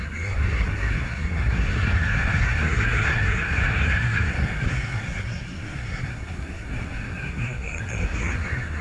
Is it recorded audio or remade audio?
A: remade